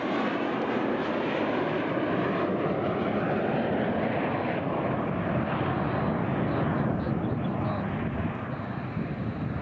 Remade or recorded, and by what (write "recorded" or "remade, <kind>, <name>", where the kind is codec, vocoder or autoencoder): recorded